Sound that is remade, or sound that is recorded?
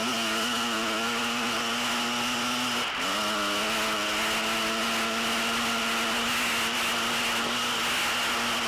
recorded